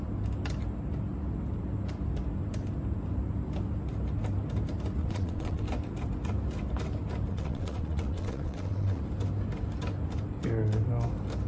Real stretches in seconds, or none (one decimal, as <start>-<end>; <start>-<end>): 0.0-5.0; 5.6-7.3; 9.0-11.5